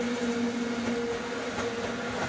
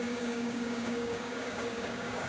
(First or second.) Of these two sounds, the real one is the first